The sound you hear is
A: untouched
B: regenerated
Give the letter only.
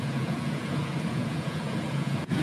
B